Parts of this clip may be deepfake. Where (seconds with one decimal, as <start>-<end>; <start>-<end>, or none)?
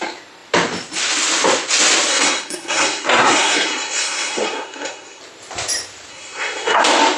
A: 2.1-5.2; 6.1-6.8